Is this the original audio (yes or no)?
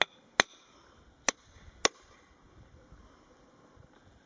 yes